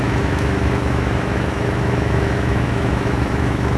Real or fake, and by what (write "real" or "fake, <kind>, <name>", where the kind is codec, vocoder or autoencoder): fake, autoencoder, DAC-VAE